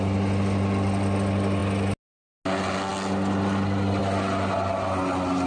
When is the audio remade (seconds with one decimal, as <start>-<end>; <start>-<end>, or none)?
none